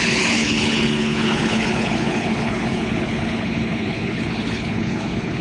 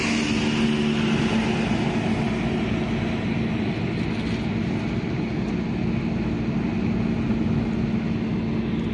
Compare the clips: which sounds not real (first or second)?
first